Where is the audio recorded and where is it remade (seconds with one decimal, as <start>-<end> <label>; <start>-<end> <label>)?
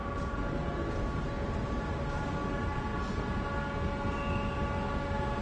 0.0-5.4 recorded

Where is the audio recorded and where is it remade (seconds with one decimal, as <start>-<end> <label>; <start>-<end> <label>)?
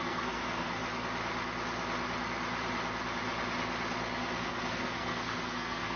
0.0-0.8 remade; 0.8-4.4 recorded; 4.4-6.0 remade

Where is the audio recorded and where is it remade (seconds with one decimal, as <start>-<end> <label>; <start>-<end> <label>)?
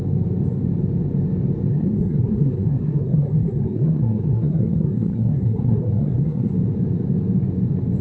0.0-1.7 recorded; 1.7-6.5 remade; 6.5-8.0 recorded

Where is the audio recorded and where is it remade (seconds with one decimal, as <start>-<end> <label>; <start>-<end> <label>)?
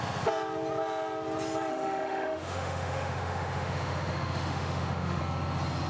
0.0-1.7 recorded; 1.7-5.2 remade; 5.2-5.9 recorded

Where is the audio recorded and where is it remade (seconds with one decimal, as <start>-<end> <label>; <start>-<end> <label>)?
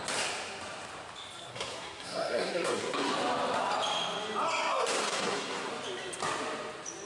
0.0-1.5 recorded; 1.5-3.1 remade; 3.1-5.0 recorded; 5.0-5.7 remade; 5.7-7.1 recorded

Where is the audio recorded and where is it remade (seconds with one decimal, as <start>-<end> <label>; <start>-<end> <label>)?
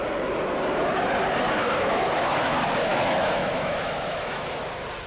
0.0-2.9 recorded; 2.9-4.6 remade; 4.6-5.1 recorded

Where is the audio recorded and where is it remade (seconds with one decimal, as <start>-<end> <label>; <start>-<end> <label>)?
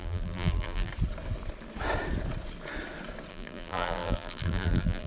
0.0-0.9 remade; 0.9-3.3 recorded; 3.3-5.1 remade